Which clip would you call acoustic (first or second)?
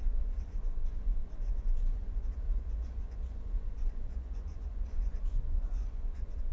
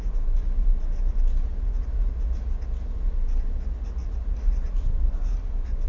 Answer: second